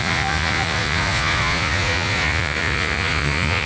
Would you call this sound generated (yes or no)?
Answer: yes